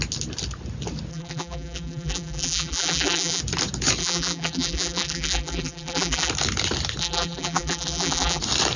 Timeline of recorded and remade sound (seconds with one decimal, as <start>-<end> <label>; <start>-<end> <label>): 0.0-1.1 recorded; 1.1-3.4 remade; 3.4-4.0 recorded; 4.0-6.3 remade; 6.3-7.0 recorded; 7.0-8.4 remade; 8.4-8.8 recorded